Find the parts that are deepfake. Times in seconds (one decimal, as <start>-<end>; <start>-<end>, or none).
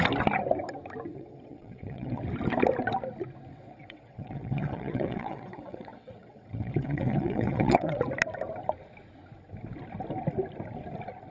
1.1-2.2; 3.5-8.0